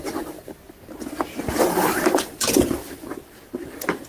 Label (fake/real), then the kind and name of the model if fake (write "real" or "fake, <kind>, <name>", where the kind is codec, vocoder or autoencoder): real